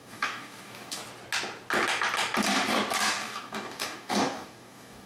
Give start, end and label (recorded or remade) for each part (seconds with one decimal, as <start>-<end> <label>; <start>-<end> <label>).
0.0-1.0 remade; 1.0-3.1 recorded; 3.1-5.1 remade

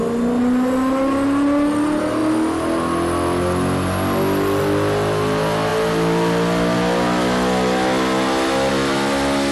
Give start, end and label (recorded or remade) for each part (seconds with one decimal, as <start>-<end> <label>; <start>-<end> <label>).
0.0-9.5 recorded

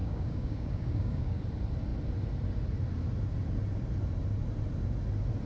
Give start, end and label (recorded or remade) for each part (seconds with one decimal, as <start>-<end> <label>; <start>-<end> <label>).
0.0-1.4 remade; 1.4-5.5 recorded